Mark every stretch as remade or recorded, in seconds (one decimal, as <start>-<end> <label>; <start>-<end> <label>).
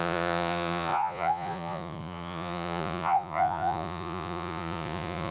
0.0-5.3 remade